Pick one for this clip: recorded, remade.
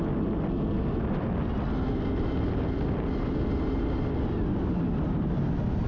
recorded